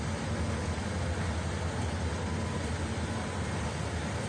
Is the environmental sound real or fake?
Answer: real